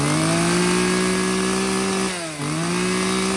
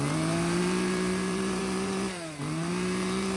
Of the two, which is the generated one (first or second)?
second